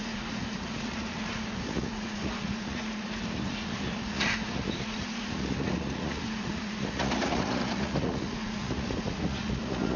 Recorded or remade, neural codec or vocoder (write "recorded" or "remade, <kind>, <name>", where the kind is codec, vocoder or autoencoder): remade, vocoder, Vocos